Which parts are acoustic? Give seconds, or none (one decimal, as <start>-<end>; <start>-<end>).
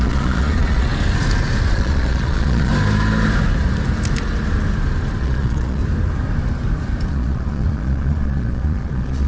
0.9-1.7; 2.7-5.2; 5.8-7.1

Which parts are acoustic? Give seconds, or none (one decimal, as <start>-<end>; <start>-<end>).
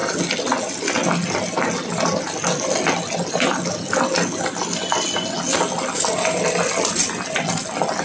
0.0-8.0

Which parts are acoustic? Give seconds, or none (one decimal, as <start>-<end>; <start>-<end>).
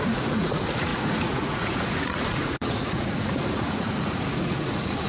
none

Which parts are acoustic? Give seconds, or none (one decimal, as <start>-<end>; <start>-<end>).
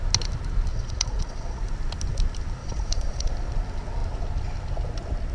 0.0-0.7; 1.6-2.6; 3.3-5.3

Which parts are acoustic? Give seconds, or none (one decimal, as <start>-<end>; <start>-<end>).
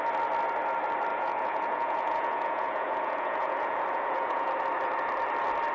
0.0-1.1; 4.5-5.7